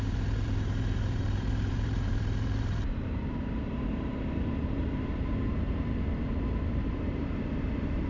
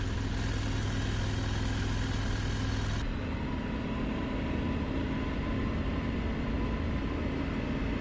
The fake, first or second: first